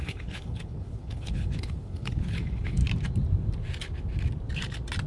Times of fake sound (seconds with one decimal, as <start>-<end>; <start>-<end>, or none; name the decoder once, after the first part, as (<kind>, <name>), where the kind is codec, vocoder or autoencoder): 0.0-2.8 (codec, HILCodec)